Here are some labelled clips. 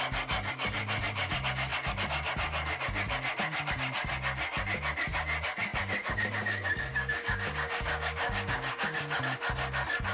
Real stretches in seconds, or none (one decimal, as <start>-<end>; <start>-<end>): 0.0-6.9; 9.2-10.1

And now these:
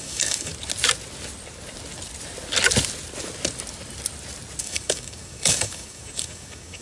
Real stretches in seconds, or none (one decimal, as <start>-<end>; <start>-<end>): 0.5-4.6

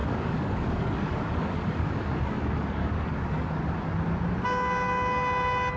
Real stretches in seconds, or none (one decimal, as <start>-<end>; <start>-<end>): 3.5-5.8